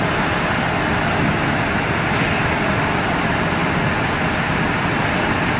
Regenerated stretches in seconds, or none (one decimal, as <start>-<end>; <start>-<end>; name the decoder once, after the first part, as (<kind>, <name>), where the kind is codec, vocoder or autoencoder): none